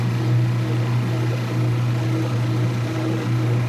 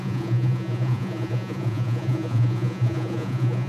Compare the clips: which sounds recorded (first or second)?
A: first